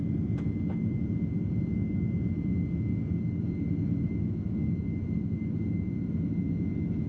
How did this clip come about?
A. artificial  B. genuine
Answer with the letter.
B